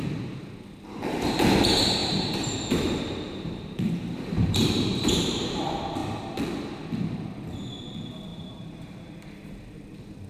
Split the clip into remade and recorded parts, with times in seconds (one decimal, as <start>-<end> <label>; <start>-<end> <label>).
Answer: 0.0-2.0 recorded; 2.0-5.6 remade; 5.6-8.3 recorded; 8.3-9.3 remade; 9.3-10.3 recorded